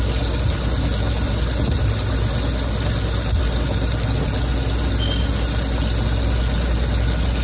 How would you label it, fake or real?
real